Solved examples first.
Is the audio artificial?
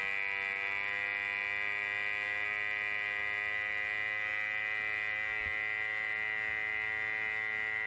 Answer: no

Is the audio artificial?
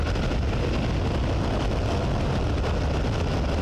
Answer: no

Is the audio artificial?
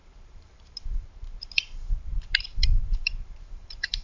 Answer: yes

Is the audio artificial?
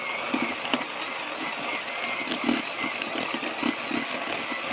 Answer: no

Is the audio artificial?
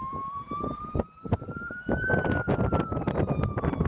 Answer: yes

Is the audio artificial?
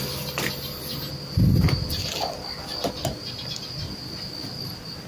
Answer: no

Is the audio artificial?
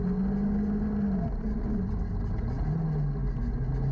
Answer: no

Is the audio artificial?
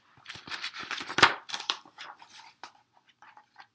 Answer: yes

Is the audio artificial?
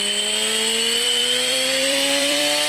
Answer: yes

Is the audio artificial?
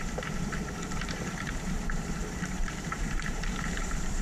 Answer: yes